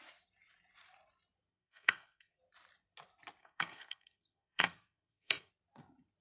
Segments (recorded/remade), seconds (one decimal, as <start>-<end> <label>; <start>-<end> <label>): 0.0-1.5 recorded; 1.5-2.4 remade; 2.4-3.4 recorded; 3.4-5.5 remade; 5.5-6.2 recorded